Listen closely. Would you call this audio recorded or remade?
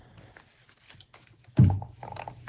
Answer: recorded